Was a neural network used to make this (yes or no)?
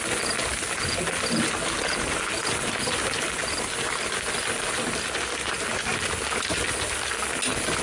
no